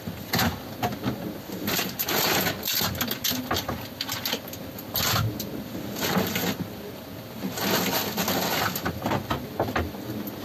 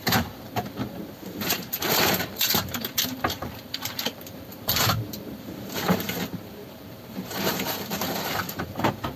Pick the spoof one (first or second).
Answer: second